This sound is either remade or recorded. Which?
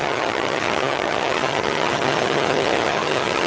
remade